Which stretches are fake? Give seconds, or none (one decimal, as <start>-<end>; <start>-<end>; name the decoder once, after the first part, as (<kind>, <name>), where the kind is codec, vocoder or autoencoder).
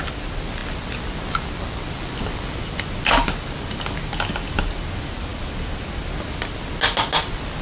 none